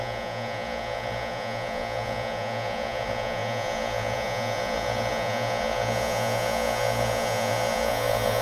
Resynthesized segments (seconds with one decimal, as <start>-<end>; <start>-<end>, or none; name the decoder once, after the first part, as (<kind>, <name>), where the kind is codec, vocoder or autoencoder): 0.0-8.4 (vocoder, Vocos)